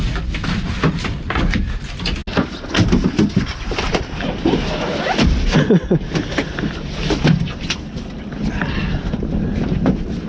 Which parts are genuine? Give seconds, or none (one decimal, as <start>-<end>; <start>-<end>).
0.0-10.3